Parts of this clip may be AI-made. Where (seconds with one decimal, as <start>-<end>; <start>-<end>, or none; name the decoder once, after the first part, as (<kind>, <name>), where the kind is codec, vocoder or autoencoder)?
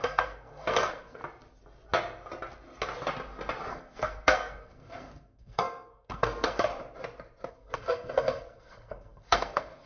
0.0-1.2 (codec, SNAC); 3.7-6.7; 7.5-9.9